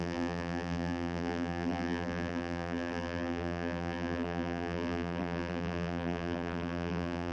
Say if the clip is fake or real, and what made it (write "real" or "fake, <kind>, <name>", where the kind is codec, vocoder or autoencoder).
fake, vocoder, BigVGAN v2